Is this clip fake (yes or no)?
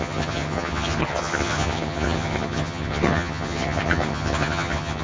yes